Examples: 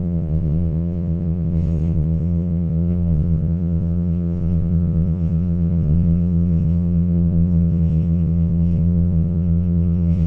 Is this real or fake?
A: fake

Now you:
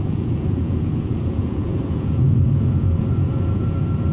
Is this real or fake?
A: fake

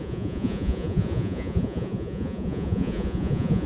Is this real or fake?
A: fake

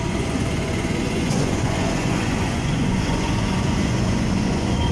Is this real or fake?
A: fake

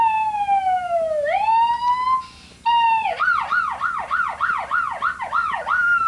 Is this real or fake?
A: real